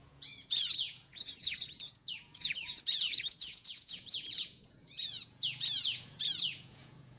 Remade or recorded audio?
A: remade